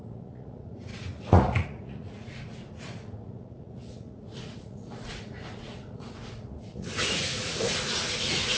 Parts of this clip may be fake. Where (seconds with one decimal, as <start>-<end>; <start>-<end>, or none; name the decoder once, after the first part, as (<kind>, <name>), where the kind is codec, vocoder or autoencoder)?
0.0-8.6 (vocoder, Vocos)